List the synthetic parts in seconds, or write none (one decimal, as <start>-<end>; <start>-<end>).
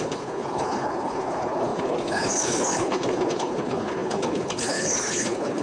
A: 0.0-5.6